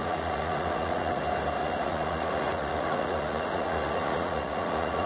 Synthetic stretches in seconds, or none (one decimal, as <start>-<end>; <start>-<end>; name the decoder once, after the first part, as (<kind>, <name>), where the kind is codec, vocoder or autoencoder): 0.0-1.2 (vocoder, Vocos); 1.6-5.1